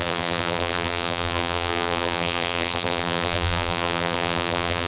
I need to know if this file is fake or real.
fake